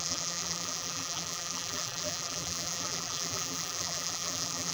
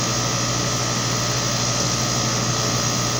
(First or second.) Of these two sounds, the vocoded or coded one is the first